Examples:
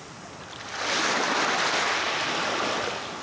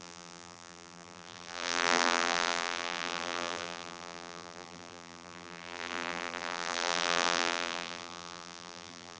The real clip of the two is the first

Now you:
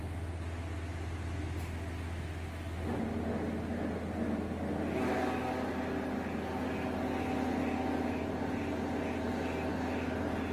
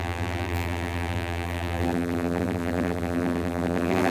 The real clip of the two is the first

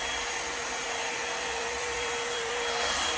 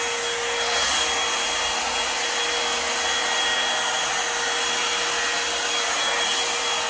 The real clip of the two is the second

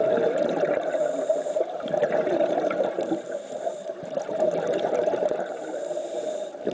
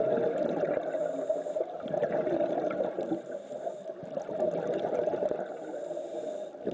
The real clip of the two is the second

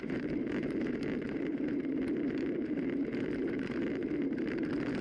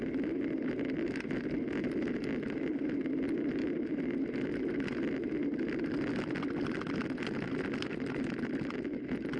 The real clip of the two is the second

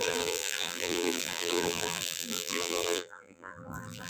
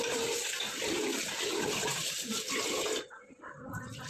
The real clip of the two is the second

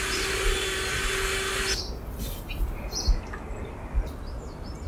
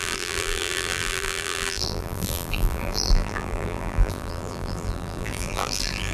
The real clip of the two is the first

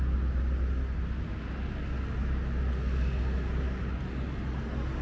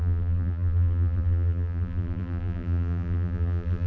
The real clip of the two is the first